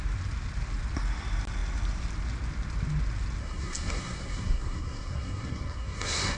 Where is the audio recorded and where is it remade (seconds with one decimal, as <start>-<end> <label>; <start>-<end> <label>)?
0.0-3.4 recorded; 3.4-6.4 remade